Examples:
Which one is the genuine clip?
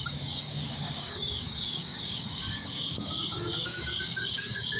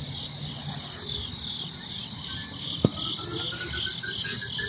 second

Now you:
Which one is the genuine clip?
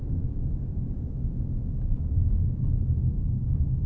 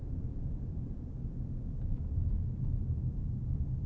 second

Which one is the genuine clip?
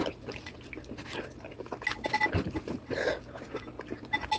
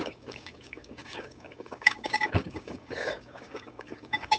first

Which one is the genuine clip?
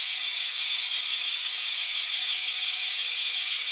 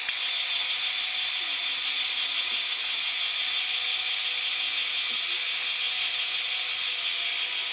second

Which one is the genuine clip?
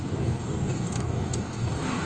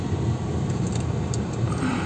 second